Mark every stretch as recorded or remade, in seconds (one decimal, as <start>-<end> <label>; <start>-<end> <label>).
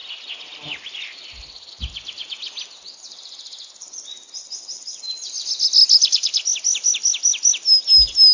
0.0-8.3 recorded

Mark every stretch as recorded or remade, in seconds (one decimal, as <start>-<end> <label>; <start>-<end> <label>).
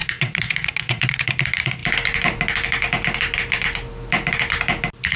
0.0-1.3 remade; 1.3-5.2 recorded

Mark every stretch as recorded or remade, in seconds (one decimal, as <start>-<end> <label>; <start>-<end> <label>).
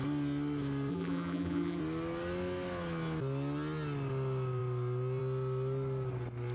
0.0-0.9 recorded; 0.9-1.8 remade; 1.8-6.5 recorded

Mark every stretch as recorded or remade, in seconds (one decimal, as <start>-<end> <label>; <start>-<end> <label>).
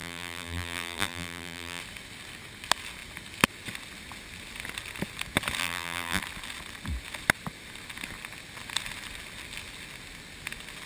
0.0-1.8 remade; 1.8-5.6 recorded; 5.6-6.2 remade; 6.2-10.9 recorded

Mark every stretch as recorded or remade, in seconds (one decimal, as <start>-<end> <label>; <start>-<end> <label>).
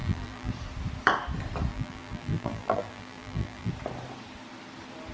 0.0-0.5 remade; 0.5-1.7 recorded; 1.7-3.7 remade; 3.7-5.1 recorded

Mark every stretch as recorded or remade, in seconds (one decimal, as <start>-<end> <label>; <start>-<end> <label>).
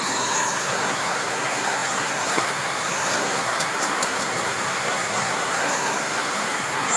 0.0-7.0 remade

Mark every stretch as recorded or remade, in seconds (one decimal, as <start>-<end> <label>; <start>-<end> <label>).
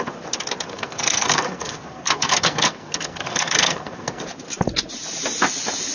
0.0-0.7 recorded; 0.7-4.2 remade; 4.2-5.9 recorded